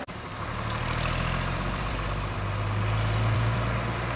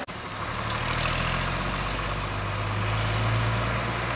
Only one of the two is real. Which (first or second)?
second